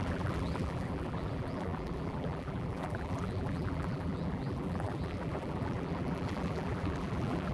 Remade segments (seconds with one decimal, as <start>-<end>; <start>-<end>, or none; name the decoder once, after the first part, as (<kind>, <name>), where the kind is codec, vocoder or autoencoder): 0.0-7.5 (vocoder, BigVGAN v2)